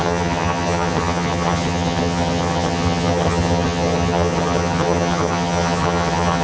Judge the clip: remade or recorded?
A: remade